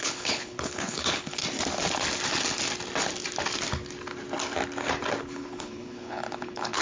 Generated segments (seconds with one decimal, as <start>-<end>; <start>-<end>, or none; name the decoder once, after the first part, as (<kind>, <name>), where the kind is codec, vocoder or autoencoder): 0.0-1.4 (codec, HILCodec); 5.2-6.8